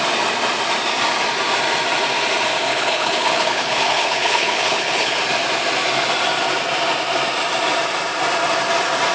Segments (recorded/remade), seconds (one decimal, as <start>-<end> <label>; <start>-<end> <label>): 0.0-2.7 recorded; 2.7-5.2 remade; 5.2-9.1 recorded